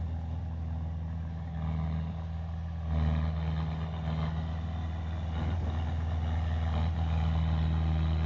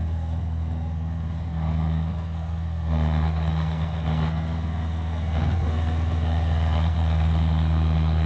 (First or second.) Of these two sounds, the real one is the first